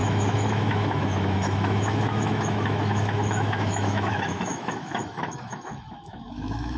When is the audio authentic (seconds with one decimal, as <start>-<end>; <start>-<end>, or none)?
none